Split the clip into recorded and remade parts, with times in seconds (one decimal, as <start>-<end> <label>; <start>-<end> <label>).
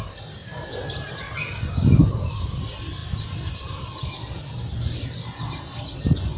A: 0.0-0.4 recorded; 0.4-1.1 remade; 1.1-2.0 recorded; 2.0-2.6 remade; 2.6-3.0 recorded; 3.0-4.4 remade; 4.4-6.4 recorded